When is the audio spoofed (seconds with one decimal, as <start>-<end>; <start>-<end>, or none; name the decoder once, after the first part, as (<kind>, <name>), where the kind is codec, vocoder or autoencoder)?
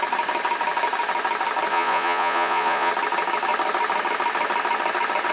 1.7-2.9 (vocoder, Vocos)